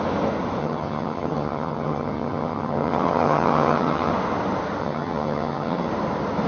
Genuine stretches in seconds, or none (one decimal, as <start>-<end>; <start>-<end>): 0.0-0.6; 4.1-4.8; 5.9-6.5